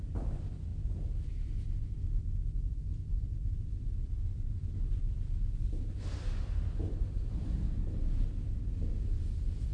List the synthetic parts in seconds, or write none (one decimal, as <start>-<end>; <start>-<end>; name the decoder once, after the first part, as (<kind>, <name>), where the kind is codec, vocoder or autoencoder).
none